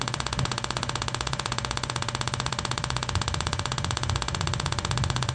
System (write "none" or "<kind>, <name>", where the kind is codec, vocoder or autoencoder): vocoder, Vocos